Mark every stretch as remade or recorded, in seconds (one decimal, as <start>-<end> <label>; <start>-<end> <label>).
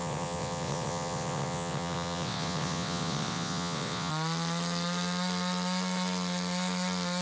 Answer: 0.0-4.1 remade; 4.1-7.2 recorded